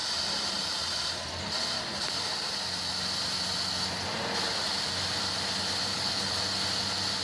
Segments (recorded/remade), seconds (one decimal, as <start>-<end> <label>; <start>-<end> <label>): 0.0-5.9 recorded; 5.9-6.4 remade; 6.4-7.2 recorded